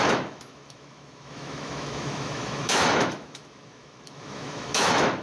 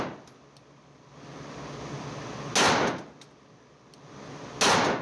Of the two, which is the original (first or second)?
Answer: second